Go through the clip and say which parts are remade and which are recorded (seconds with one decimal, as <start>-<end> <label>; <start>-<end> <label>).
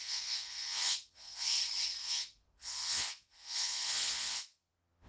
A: 0.0-1.6 remade; 1.6-2.0 recorded; 2.0-5.1 remade